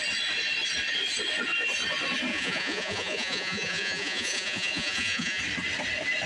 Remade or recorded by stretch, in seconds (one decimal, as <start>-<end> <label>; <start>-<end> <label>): 0.0-2.3 recorded; 2.3-5.4 remade; 5.4-6.3 recorded